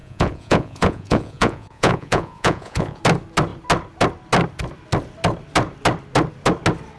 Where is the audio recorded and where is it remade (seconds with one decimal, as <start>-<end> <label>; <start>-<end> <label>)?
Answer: 0.0-3.0 remade; 3.0-7.0 recorded